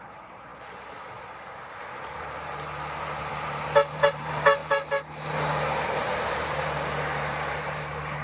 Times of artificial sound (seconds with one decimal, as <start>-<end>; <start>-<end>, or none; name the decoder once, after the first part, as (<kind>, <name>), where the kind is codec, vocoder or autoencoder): 0.0-0.5 (vocoder, BigVGAN v2); 3.3-4.6; 6.3-8.2